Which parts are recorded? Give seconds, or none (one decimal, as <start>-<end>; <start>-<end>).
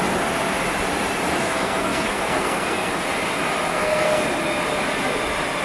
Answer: 0.0-1.4; 2.9-3.7; 4.2-5.6